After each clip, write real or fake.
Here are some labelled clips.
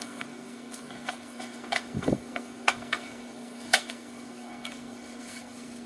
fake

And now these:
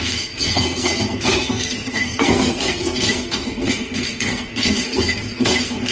fake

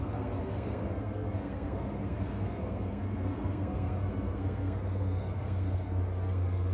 fake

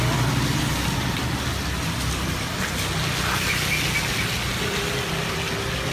real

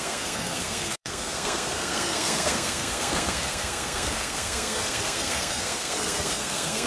fake